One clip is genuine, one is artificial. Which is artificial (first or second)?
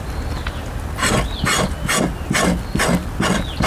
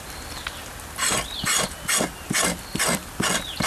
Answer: second